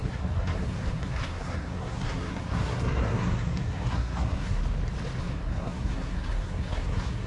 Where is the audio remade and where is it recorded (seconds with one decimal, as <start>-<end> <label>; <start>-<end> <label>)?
0.0-4.6 remade; 4.6-5.2 recorded; 5.2-7.3 remade

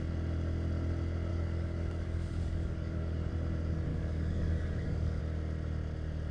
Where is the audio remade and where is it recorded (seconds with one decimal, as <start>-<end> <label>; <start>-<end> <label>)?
0.0-1.3 recorded; 1.3-3.3 remade; 3.3-3.9 recorded; 3.9-5.2 remade; 5.2-6.3 recorded

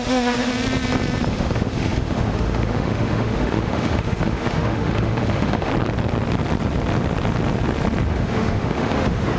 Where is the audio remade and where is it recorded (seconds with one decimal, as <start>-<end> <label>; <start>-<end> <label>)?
0.0-0.5 remade; 0.5-1.3 recorded; 1.3-5.7 remade; 5.7-8.1 recorded; 8.1-9.4 remade

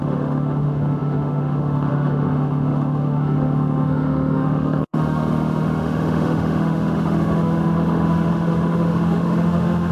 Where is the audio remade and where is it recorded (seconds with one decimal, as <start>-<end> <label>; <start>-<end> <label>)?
0.0-9.9 remade

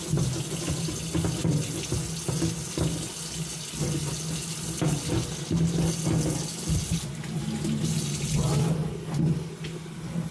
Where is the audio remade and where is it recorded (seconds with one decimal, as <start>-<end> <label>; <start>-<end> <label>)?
0.0-10.3 recorded